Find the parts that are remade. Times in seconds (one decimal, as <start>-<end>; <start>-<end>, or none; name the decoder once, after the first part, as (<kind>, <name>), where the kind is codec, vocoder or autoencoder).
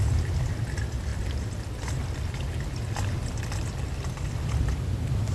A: none